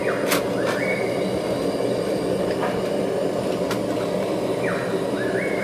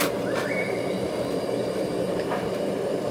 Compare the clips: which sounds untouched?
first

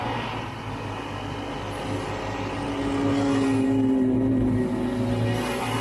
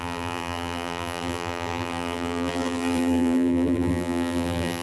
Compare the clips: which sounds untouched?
first